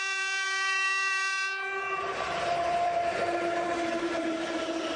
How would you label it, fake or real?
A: fake